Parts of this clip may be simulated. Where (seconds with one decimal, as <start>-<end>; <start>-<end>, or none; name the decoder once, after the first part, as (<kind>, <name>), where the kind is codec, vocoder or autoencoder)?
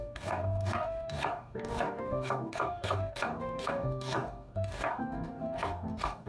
0.0-6.3 (codec, DAC)